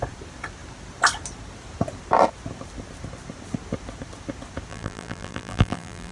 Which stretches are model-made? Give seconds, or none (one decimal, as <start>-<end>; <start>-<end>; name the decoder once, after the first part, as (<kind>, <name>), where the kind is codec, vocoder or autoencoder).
4.7-6.1 (vocoder, BigVGAN v2)